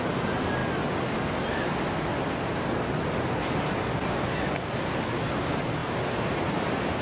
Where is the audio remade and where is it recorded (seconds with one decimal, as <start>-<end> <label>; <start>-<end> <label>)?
0.0-7.0 recorded